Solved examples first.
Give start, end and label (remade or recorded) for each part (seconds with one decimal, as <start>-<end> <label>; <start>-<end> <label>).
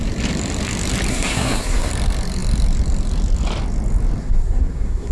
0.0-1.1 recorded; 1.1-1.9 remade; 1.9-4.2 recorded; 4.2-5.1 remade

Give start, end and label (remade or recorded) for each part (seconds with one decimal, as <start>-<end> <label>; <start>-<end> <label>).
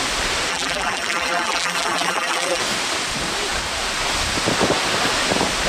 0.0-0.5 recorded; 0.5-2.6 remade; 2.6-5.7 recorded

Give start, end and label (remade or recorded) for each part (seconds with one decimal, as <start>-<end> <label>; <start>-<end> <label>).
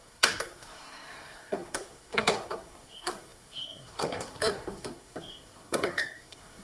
0.0-6.6 remade